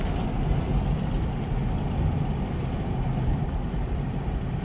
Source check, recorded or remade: recorded